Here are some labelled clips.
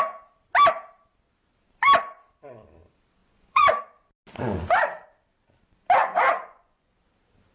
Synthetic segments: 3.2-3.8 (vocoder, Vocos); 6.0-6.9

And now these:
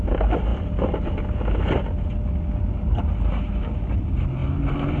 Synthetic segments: none

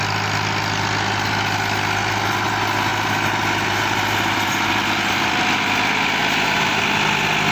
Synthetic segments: 6.2-6.8 (vocoder, BigVGAN v2)

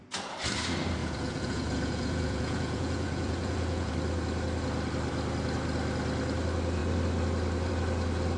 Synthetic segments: 1.0-3.9 (vocoder, Vocos)